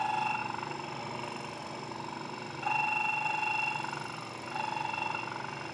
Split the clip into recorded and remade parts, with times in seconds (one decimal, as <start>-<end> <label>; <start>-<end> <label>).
0.0-5.7 recorded